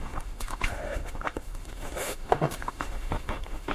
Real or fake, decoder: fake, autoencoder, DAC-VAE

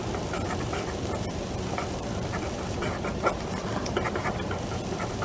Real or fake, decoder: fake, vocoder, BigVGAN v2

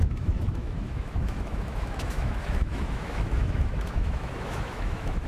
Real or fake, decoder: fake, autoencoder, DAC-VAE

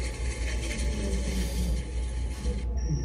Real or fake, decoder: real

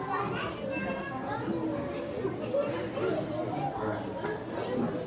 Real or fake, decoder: real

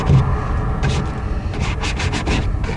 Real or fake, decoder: real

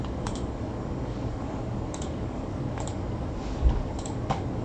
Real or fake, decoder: fake, codec, DAC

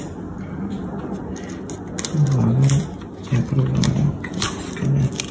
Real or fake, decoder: real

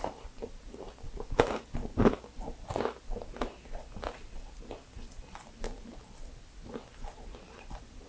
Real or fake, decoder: real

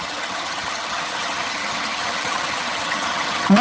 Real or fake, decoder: fake, vocoder, HiFi-GAN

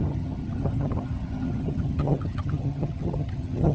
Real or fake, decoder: fake, vocoder, HiFi-GAN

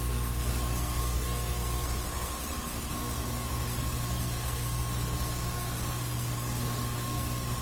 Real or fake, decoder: fake, codec, SNAC